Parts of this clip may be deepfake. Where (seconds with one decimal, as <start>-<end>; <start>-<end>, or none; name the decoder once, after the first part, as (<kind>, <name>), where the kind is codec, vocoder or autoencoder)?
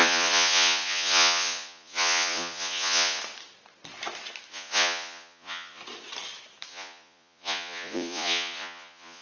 0.0-3.2 (vocoder, Vocos); 4.5-5.8; 6.7-9.2